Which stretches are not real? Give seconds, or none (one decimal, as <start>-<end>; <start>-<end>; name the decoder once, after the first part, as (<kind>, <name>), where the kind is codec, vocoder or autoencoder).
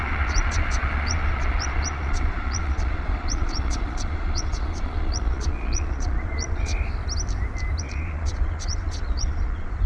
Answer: 0.0-6.7 (vocoder, Vocos); 7.8-9.9